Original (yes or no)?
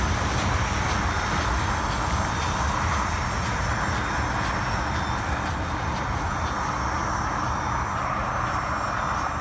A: yes